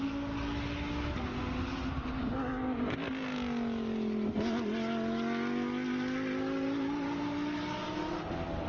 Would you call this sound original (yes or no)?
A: yes